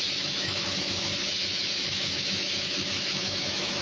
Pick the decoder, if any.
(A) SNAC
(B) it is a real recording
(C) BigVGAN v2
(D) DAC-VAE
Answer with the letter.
D